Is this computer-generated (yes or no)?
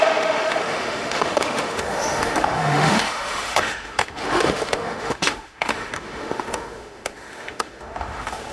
yes